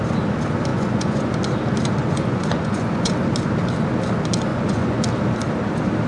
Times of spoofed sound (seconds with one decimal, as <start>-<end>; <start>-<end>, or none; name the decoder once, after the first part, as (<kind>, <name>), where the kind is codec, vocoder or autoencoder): 0.7-1.3 (vocoder, Vocos); 2.0-3.1; 4.5-5.0